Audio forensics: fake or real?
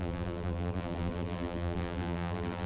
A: fake